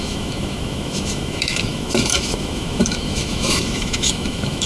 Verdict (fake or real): fake